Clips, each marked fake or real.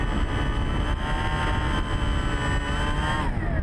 real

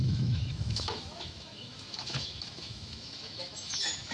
fake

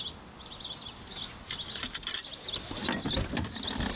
real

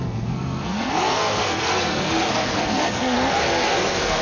fake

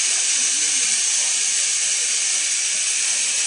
fake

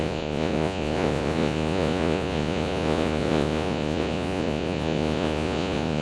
fake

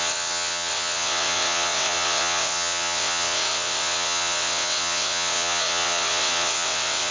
fake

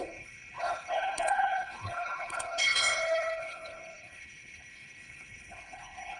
fake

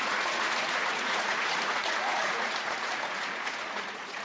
fake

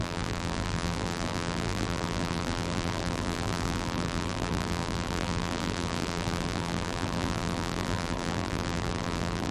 fake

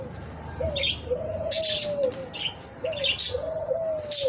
real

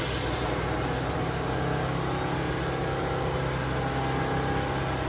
real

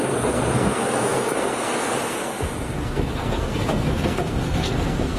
fake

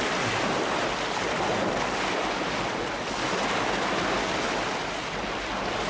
real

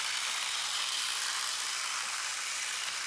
real